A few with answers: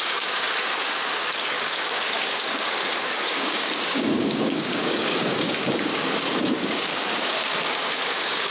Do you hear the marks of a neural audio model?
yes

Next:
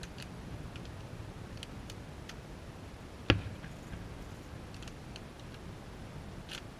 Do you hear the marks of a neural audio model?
no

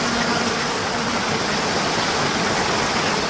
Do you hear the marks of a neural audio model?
no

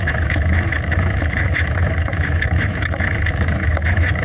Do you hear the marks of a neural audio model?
yes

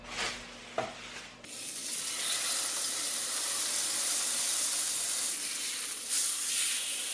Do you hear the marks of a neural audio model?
no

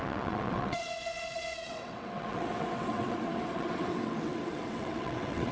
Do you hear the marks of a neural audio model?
yes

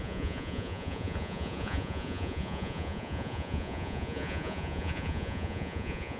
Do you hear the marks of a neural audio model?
yes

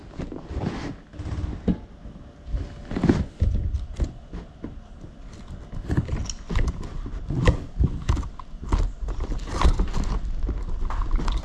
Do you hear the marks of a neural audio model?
no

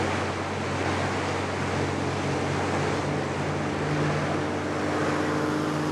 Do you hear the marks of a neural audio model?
no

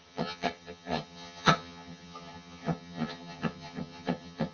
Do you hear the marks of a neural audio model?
yes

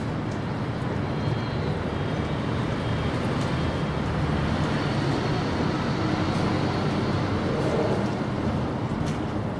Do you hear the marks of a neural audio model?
no